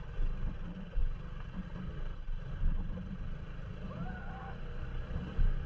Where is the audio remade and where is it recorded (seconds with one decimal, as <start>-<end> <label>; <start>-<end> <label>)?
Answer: 0.0-5.7 recorded